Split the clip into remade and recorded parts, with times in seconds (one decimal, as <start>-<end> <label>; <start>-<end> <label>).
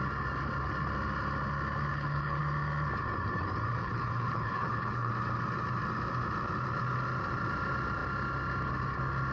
0.0-1.9 recorded; 1.9-2.4 remade; 2.4-3.8 recorded; 3.8-5.1 remade; 5.1-9.3 recorded